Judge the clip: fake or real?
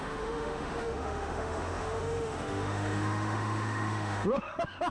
fake